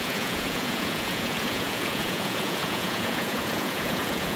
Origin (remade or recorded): remade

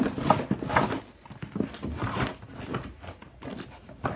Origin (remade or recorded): recorded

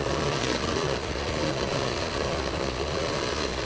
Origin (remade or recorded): remade